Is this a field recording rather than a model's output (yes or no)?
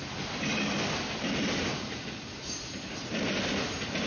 yes